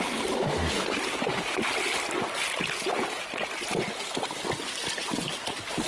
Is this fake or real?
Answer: real